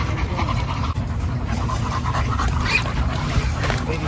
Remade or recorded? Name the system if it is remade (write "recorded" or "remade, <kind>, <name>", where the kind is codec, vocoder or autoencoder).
remade, vocoder, BigVGAN v2